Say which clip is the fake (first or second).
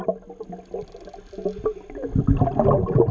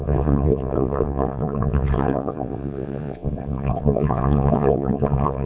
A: second